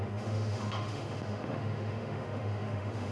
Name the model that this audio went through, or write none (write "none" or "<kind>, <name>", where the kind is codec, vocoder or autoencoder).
autoencoder, DAC-VAE